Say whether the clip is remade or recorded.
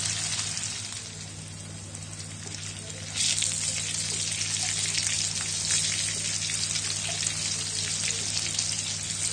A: recorded